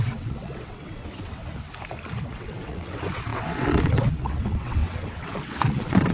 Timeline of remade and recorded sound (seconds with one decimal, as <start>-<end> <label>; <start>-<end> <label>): 0.0-1.4 remade; 1.4-2.3 recorded; 2.3-6.1 remade